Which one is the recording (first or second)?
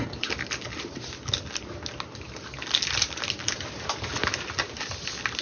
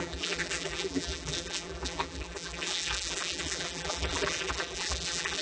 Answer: first